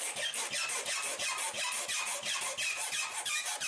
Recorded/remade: recorded